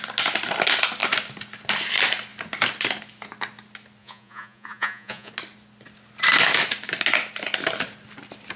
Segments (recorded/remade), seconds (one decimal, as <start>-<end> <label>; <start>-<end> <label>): 0.0-4.0 recorded; 4.0-5.3 remade; 5.3-8.6 recorded